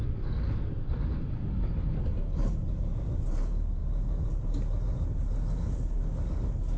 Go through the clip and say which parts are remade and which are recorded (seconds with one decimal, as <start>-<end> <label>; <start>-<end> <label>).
0.0-2.3 recorded; 2.3-3.2 remade; 3.2-6.8 recorded